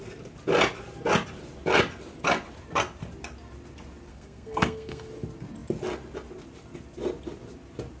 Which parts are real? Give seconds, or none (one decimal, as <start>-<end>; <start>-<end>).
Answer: 0.0-4.1; 5.1-8.0